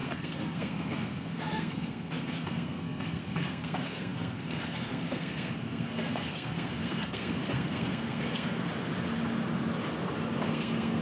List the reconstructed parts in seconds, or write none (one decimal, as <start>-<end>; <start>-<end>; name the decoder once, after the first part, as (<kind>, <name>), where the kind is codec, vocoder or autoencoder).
0.0-8.7 (codec, SNAC); 10.4-11.0